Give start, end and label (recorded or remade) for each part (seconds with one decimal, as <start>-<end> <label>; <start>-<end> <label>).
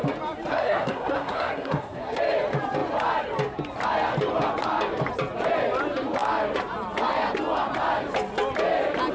0.0-0.5 recorded; 0.5-2.2 remade; 2.2-9.1 recorded